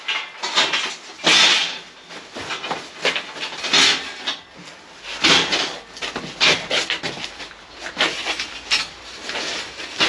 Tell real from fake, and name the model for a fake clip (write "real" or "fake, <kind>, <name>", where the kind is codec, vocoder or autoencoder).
real